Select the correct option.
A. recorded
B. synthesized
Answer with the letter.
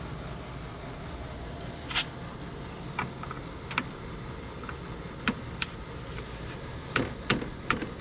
A